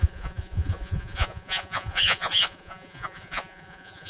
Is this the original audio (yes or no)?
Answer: no